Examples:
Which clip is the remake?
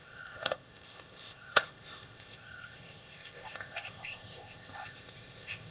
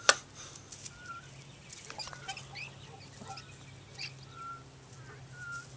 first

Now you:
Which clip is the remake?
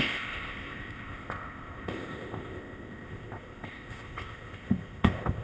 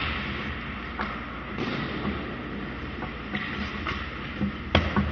first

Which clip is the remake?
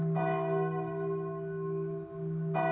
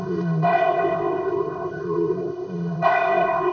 second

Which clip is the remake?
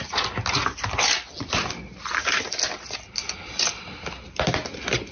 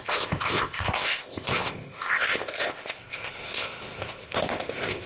second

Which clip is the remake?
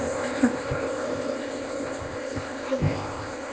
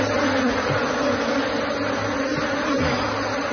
first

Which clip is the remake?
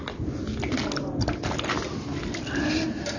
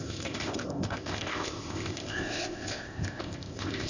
second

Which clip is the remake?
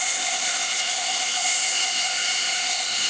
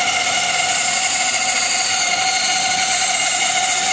first